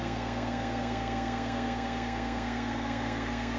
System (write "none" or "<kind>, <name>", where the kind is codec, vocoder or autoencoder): codec, SNAC